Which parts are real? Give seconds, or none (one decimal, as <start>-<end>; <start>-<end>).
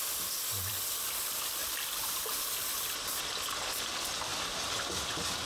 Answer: 0.0-5.5